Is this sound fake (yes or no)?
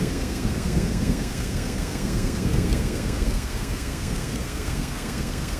yes